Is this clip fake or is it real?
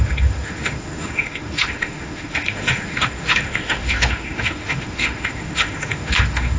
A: fake